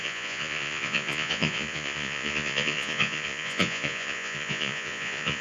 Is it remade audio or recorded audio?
remade